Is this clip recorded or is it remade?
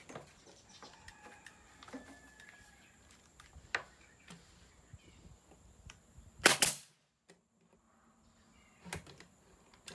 recorded